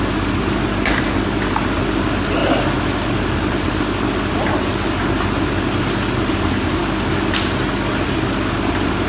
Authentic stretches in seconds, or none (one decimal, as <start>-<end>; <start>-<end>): 0.0-9.1

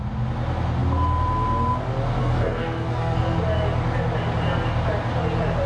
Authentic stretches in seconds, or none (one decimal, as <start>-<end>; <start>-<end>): 0.0-2.2; 3.4-5.7